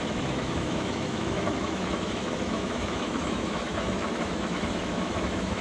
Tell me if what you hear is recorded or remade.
remade